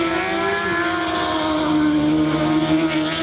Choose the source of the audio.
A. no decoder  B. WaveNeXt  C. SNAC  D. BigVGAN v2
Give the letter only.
A